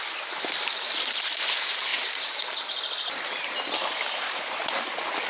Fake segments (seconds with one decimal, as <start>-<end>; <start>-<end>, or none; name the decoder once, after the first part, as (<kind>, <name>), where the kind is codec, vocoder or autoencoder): none